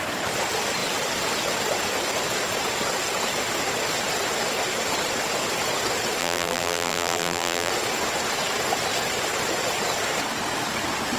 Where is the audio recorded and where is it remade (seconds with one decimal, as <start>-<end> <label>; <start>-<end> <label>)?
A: 0.0-6.2 recorded; 6.2-7.7 remade; 7.7-11.2 recorded